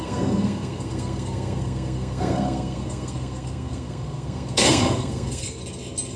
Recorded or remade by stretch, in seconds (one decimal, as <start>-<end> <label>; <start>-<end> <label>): 0.0-5.6 remade; 5.6-6.2 recorded